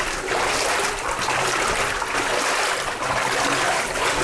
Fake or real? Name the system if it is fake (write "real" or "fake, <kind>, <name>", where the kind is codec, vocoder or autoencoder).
real